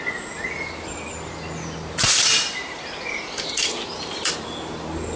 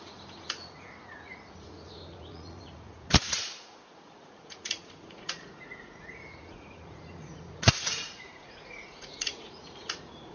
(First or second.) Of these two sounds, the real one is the first